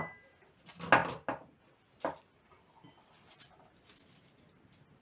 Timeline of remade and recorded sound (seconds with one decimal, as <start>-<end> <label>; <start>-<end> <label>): 0.0-5.0 recorded